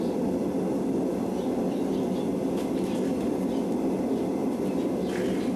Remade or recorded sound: recorded